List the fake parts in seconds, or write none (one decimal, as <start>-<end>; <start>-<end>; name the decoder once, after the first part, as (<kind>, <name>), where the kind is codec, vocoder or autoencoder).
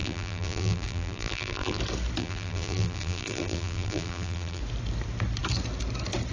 0.0-1.8 (vocoder, BigVGAN v2); 2.2-4.6